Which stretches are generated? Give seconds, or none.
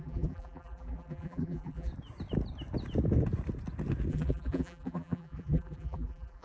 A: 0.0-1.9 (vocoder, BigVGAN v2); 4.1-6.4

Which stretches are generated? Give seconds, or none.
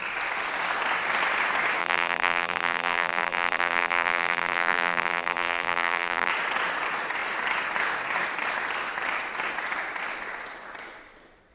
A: 1.8-6.3 (vocoder, BigVGAN v2)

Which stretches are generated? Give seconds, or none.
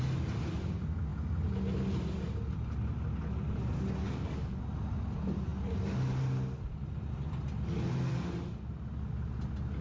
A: 4.0-4.6 (codec, DAC)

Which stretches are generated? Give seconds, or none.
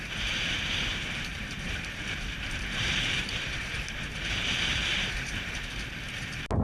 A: 0.9-4.9 (vocoder, BigVGAN v2)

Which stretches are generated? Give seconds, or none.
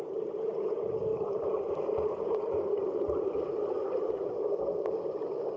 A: 1.1-4.5 (vocoder, BigVGAN v2)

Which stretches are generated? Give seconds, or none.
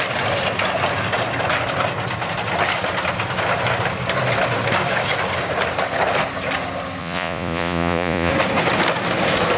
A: 7.0-8.3 (vocoder, Vocos)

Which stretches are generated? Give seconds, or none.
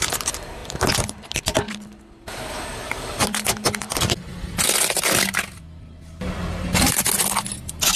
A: none